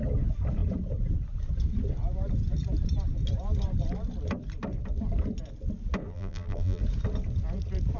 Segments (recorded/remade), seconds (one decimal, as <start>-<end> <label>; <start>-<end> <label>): 0.0-6.1 recorded; 6.1-6.8 remade; 6.8-8.0 recorded